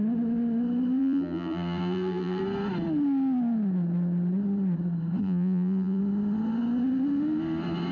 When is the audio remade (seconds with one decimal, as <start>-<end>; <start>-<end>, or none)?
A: 1.0-2.4; 5.2-6.0